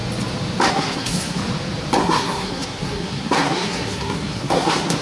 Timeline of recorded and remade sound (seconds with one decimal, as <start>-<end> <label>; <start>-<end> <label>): 0.0-0.7 recorded; 0.7-1.4 remade; 1.4-2.0 recorded; 2.0-5.0 remade